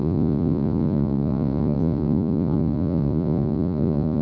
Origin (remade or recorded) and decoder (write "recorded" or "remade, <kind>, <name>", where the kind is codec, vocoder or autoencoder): remade, vocoder, Vocos